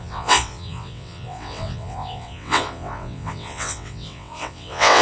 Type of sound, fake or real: fake